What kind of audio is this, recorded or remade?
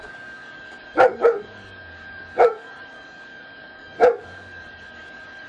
remade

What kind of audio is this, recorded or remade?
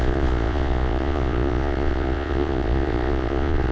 remade